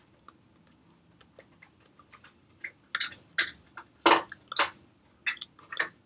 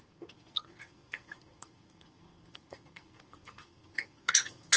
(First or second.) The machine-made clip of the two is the second